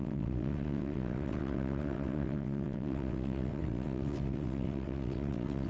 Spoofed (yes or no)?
yes